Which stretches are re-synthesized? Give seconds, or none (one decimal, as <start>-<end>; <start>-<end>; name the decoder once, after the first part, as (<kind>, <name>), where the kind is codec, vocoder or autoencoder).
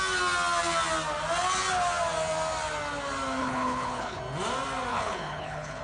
3.4-4.2 (codec, HILCodec); 4.9-5.8